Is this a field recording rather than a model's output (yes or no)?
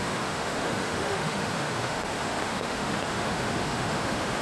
no